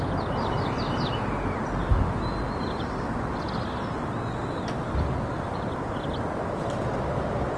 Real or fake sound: real